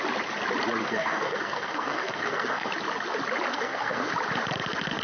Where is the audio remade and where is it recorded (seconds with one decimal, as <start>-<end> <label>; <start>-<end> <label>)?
0.0-0.8 recorded; 0.8-2.7 remade; 2.7-3.5 recorded; 3.5-4.1 remade; 4.1-5.0 recorded